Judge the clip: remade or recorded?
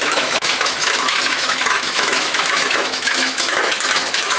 remade